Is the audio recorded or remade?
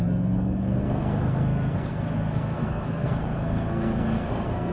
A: remade